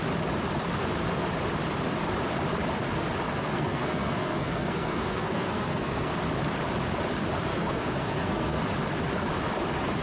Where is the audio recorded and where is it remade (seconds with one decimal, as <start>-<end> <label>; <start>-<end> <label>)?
0.0-3.3 recorded; 3.3-6.1 remade; 6.1-7.5 recorded; 7.5-8.6 remade; 8.6-10.0 recorded